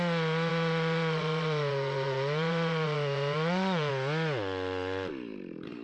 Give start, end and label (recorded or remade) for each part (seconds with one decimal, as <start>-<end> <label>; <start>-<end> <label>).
0.0-0.5 recorded; 0.5-3.9 remade; 3.9-5.8 recorded